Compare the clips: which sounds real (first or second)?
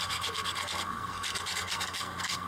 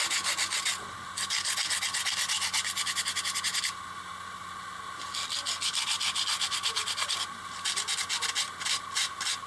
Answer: second